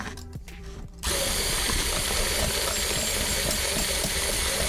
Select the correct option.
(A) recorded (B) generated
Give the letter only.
B